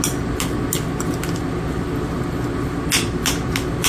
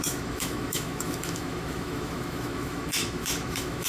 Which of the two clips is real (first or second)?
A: first